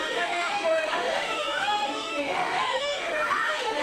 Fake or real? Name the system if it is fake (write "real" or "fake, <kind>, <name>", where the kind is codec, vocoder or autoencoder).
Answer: fake, autoencoder, DAC-VAE